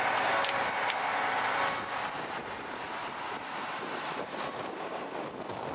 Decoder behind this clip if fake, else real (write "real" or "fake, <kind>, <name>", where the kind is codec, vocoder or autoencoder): real